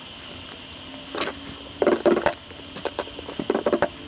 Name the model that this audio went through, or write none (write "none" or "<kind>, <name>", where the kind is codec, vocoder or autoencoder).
none